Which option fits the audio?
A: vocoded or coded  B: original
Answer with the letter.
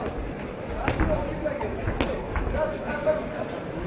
B